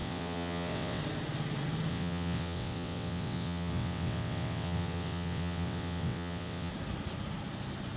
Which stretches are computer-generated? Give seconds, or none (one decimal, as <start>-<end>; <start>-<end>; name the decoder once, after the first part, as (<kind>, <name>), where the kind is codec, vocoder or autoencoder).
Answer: 0.0-1.0 (vocoder, WaveNeXt); 1.9-6.7